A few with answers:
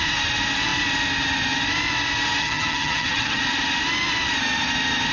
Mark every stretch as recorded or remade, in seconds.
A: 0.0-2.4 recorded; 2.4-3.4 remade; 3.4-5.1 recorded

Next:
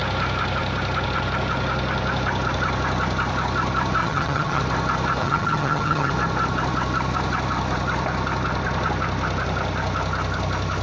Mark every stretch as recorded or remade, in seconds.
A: 0.0-4.0 recorded; 4.0-4.6 remade; 4.6-5.2 recorded; 5.2-6.1 remade; 6.1-10.8 recorded

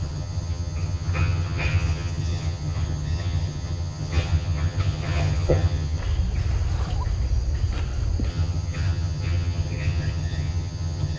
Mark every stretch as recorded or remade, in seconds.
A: 0.0-6.0 remade; 6.0-8.3 recorded; 8.3-11.2 remade

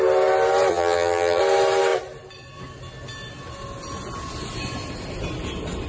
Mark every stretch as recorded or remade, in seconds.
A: 0.0-0.7 recorded; 0.7-1.4 remade; 1.4-5.9 recorded

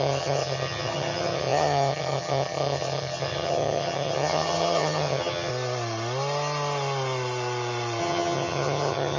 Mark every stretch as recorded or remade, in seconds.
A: 0.0-5.5 remade; 5.5-8.0 recorded; 8.0-9.2 remade